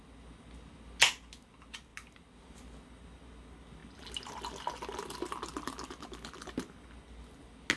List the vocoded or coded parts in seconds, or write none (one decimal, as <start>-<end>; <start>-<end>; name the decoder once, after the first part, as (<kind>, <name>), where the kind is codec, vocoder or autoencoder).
none